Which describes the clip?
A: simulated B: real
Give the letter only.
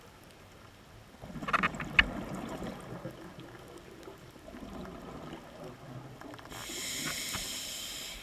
B